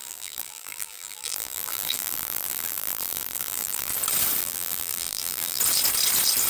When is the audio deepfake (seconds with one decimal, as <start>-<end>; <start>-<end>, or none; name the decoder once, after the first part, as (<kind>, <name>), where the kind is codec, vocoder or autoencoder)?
0.0-3.9 (vocoder, BigVGAN v2); 4.4-5.6